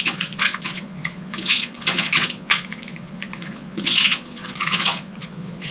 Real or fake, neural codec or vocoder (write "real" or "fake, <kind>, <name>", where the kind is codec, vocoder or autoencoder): fake, vocoder, Vocos